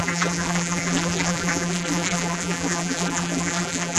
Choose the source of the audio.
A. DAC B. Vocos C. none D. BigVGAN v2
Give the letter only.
D